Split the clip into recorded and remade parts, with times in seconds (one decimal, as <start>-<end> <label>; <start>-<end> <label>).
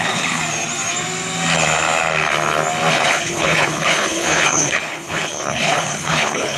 0.0-0.4 remade; 0.4-2.9 recorded; 2.9-6.6 remade